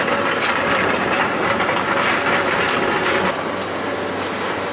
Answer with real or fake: real